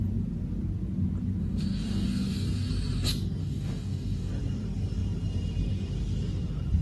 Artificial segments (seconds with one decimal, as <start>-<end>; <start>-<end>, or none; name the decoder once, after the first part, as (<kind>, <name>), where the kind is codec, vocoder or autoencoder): 1.4-2.7 (codec, DAC); 3.4-4.3